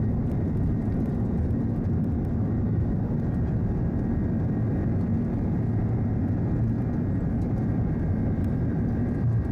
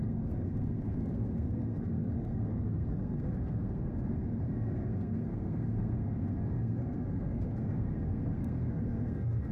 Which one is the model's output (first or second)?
second